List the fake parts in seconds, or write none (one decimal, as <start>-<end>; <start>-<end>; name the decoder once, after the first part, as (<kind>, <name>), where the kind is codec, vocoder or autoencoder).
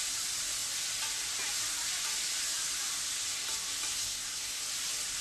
3.9-4.6 (codec, SNAC)